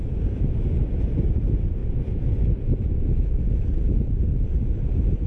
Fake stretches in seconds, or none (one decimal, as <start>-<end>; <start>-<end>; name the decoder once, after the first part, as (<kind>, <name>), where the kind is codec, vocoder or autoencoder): none